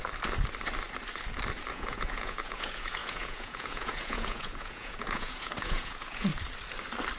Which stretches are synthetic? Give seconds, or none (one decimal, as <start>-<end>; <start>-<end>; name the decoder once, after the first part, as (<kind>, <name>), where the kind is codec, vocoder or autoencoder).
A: 1.7-6.3 (vocoder, Vocos)